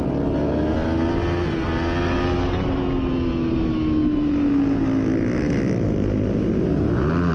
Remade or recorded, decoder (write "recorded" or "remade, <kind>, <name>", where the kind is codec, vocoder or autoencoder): recorded